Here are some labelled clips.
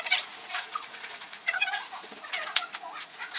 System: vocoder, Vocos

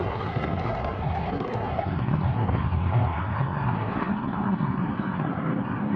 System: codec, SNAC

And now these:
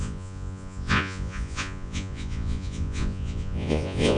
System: vocoder, Vocos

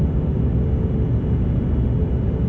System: none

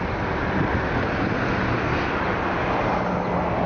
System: none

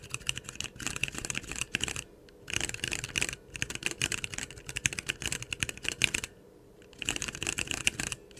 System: none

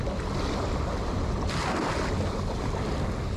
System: none